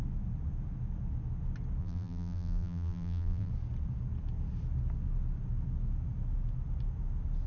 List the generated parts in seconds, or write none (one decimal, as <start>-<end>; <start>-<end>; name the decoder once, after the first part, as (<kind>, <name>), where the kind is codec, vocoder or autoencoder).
1.8-3.5 (vocoder, BigVGAN v2)